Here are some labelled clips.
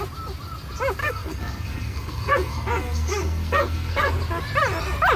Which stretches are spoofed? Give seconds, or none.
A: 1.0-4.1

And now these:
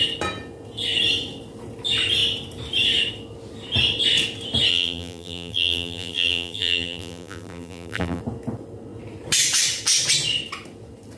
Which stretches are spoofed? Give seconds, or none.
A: 4.7-8.2

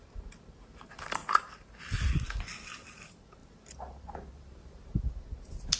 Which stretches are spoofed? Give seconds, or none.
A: none

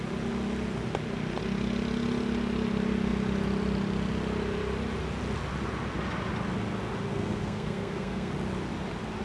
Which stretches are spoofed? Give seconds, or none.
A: 7.1-8.3

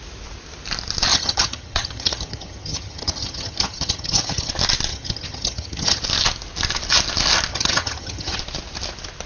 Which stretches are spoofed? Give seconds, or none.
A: 1.1-4.5; 4.9-6.0; 7.5-8.4

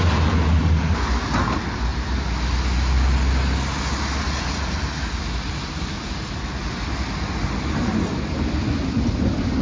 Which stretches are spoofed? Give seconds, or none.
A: none

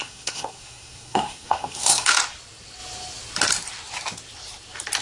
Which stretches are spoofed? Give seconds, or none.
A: 0.0-2.1